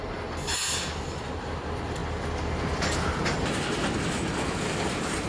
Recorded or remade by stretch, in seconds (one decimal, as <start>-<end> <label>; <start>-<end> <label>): 0.0-5.3 recorded